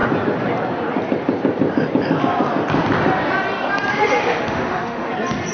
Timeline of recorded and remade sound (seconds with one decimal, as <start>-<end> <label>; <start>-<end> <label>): 0.0-3.9 recorded; 3.9-5.1 remade; 5.1-5.5 recorded